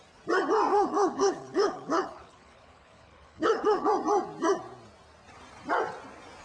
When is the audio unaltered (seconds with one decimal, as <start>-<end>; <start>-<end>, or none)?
0.0-0.7; 3.9-6.4